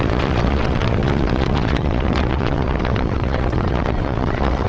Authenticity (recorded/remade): remade